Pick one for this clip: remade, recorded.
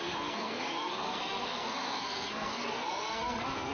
remade